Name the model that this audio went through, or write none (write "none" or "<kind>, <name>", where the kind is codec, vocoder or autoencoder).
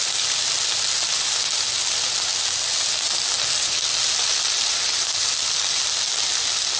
none